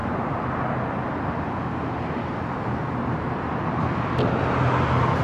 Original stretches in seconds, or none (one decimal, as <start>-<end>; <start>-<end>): 0.0-5.2